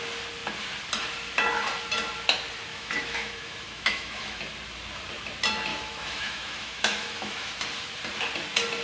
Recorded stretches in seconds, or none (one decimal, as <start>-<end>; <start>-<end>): 0.0-2.7; 4.4-5.7; 7.5-8.8